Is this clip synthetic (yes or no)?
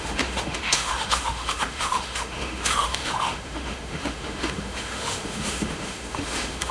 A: yes